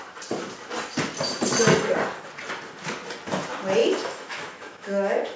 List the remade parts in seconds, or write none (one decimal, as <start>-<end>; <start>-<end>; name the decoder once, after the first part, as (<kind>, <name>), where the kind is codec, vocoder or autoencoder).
3.8-5.4 (autoencoder, DAC-VAE)